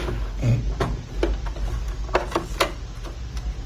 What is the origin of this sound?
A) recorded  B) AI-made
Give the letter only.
A